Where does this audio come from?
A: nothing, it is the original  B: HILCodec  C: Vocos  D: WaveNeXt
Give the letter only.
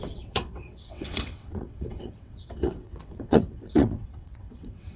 D